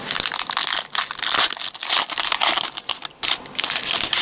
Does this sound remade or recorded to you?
recorded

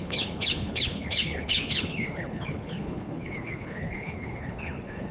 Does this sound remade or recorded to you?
remade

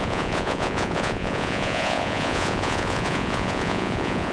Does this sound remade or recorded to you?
remade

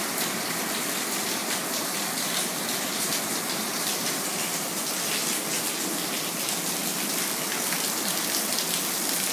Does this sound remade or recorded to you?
recorded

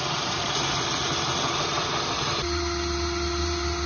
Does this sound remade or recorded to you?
recorded